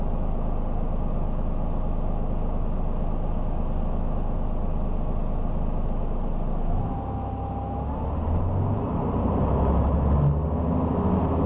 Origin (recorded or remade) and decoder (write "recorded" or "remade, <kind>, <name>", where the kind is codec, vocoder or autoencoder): recorded